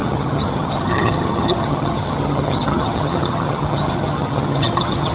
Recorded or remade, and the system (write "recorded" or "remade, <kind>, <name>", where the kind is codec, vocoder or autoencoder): remade, vocoder, HiFi-GAN